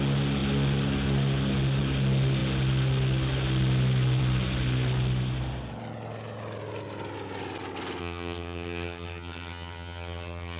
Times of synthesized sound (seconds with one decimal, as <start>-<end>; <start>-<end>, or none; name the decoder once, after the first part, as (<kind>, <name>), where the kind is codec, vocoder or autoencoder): 8.0-10.6 (vocoder, HiFi-GAN)